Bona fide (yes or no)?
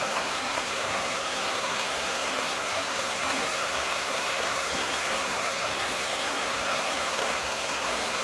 no